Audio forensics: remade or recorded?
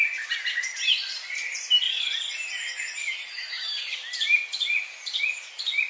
recorded